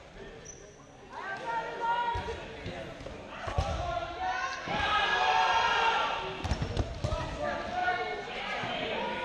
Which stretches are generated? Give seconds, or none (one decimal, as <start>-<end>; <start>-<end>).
7.8-8.7